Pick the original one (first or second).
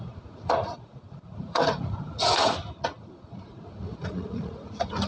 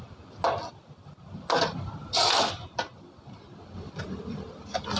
second